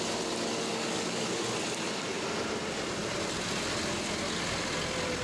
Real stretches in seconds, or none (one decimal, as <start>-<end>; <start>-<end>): 0.0-0.7; 1.3-5.2